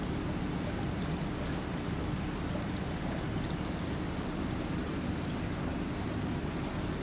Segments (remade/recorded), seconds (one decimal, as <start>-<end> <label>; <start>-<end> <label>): 0.0-1.7 recorded; 1.7-5.9 remade; 5.9-7.0 recorded